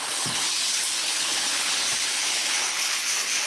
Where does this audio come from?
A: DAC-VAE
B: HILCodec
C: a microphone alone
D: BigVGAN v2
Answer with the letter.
B